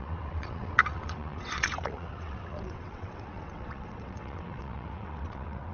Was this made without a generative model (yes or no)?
no